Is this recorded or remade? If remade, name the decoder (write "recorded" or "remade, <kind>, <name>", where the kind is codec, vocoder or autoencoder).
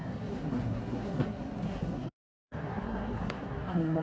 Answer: remade, codec, SNAC